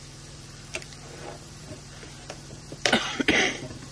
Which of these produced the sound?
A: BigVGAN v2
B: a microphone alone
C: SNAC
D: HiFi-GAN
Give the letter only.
A